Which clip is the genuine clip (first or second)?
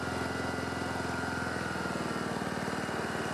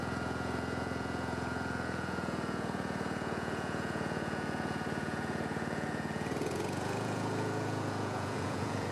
first